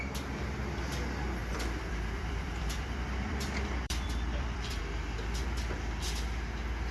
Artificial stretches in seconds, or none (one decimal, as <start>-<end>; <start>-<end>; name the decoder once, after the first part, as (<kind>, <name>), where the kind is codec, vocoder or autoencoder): 1.4-4.8 (vocoder, BigVGAN v2)

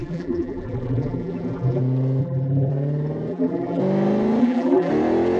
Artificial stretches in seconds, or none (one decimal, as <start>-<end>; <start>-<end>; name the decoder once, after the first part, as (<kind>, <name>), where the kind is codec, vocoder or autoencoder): 0.0-1.8 (vocoder, BigVGAN v2); 2.2-2.7; 3.3-3.8; 4.4-4.9